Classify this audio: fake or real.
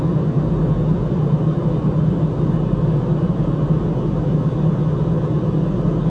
real